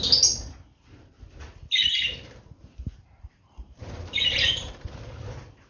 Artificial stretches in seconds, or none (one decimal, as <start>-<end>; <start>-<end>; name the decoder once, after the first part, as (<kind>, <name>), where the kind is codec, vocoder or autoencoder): 1.5-4.9 (vocoder, BigVGAN v2)